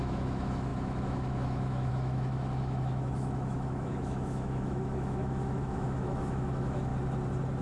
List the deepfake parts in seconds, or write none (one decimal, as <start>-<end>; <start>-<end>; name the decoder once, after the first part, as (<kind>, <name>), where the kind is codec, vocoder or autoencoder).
0.0-6.9 (autoencoder, DAC-VAE)